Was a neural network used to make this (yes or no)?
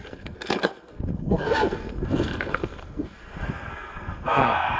yes